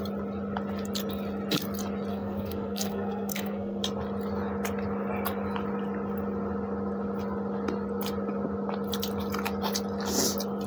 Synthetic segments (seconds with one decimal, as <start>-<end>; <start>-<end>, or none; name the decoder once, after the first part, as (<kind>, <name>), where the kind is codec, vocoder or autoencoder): 2.1-3.8 (codec, SNAC)

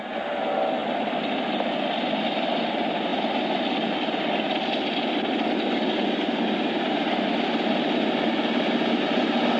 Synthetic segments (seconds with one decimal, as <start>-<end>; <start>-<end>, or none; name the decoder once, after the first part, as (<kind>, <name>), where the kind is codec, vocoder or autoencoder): none

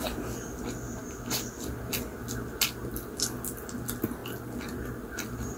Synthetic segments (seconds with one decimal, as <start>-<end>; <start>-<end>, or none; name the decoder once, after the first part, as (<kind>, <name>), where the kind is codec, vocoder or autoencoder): none

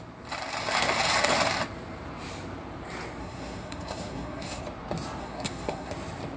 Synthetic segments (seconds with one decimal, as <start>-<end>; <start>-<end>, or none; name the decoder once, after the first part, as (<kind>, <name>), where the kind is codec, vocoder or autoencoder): 3.2-4.6 (codec, SNAC); 5.2-5.9

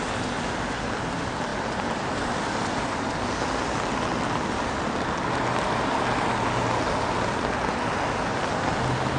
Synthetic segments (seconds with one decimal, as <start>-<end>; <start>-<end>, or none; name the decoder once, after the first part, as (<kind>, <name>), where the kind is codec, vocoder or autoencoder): none

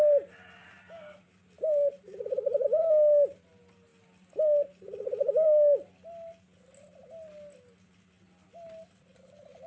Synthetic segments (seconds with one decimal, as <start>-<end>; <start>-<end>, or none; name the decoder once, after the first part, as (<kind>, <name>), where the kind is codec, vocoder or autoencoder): none

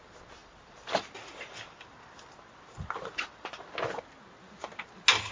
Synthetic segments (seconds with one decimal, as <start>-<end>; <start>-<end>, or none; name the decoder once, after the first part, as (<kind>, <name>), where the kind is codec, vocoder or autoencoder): 0.4-3.6 (vocoder, BigVGAN v2)

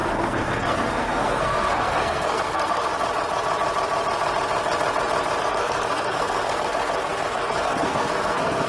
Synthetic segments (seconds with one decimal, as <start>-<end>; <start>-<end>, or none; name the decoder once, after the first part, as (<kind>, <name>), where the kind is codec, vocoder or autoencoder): 0.0-2.9 (codec, SNAC); 5.4-8.7